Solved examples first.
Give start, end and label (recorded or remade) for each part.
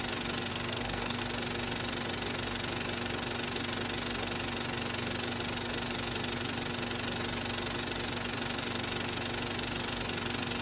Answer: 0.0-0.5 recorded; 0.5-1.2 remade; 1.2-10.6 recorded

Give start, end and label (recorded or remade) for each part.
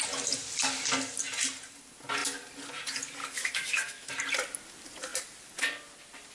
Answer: 0.0-3.2 recorded; 3.2-4.1 remade; 4.1-6.3 recorded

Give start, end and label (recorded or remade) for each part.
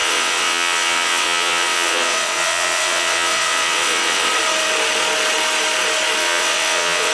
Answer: 0.0-4.3 remade; 4.3-6.2 recorded; 6.2-7.1 remade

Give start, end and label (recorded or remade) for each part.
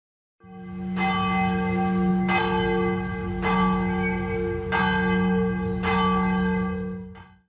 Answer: 0.0-7.5 recorded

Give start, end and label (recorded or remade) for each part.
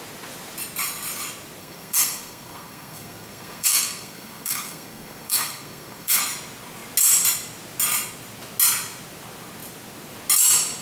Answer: 0.0-1.6 recorded; 1.6-6.2 remade; 6.2-10.8 recorded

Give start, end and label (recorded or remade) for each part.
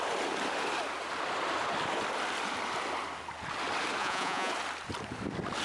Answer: 0.0-4.0 recorded; 4.0-4.5 remade; 4.5-5.6 recorded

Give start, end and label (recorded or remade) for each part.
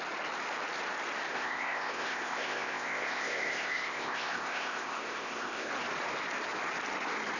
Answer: 0.0-1.3 recorded; 1.3-5.7 remade; 5.7-7.4 recorded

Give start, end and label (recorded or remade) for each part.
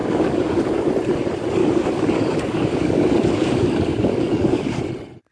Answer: 0.0-0.9 remade; 0.9-1.6 recorded; 1.6-4.8 remade; 4.8-5.3 recorded